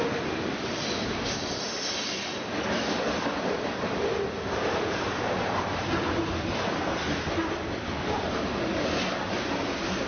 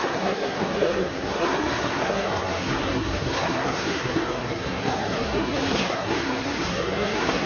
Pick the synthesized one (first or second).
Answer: second